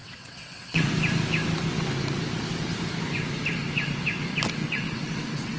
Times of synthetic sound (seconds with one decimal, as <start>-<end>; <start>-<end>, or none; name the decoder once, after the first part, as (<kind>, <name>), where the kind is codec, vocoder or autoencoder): 0.0-0.9 (vocoder, WaveNeXt); 4.6-5.6

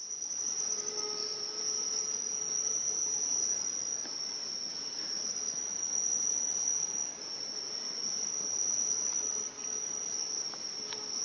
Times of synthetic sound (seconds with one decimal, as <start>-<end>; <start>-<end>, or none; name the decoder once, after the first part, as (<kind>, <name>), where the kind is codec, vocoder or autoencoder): none

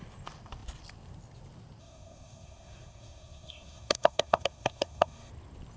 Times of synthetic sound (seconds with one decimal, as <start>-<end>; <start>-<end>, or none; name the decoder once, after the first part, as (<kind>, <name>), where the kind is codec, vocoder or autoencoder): 1.8-5.3 (codec, SNAC)

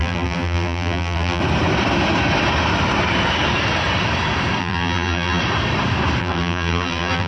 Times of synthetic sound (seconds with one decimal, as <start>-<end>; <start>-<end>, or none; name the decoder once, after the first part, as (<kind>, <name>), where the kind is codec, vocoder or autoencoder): 0.0-1.4 (vocoder, BigVGAN v2); 4.6-5.4; 6.2-7.3